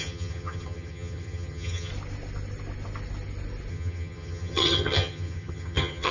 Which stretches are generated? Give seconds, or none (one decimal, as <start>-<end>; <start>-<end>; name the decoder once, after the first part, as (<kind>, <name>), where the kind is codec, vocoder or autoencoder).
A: 0.0-1.9 (vocoder, HiFi-GAN); 3.7-6.1